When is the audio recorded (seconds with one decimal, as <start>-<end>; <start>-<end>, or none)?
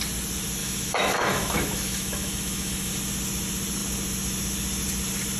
0.0-0.6; 2.9-5.4